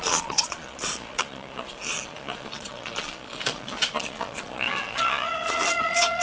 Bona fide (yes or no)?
no